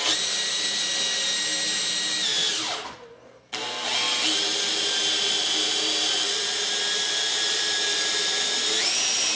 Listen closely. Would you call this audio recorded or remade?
recorded